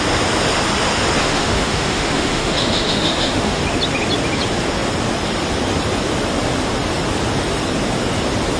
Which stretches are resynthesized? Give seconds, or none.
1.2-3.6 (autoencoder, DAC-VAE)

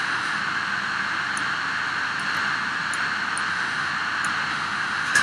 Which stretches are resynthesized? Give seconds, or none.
0.0-0.4 (autoencoder, DAC-VAE); 3.5-3.9; 4.5-5.2

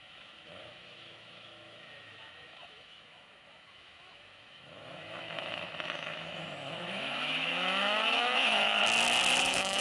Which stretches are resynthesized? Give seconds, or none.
0.0-8.8 (autoencoder, DAC-VAE); 9.4-9.8